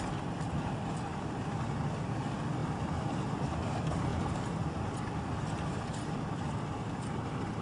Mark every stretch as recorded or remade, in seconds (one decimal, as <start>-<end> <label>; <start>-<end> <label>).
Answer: 0.0-2.6 remade; 2.6-3.4 recorded; 3.4-4.1 remade; 4.1-4.9 recorded; 4.9-7.6 remade